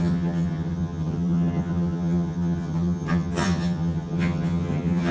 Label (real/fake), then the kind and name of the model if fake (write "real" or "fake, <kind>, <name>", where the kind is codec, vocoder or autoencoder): fake, vocoder, HiFi-GAN